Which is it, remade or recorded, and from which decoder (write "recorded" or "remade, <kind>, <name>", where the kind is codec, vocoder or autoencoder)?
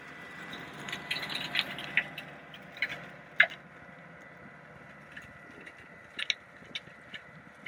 recorded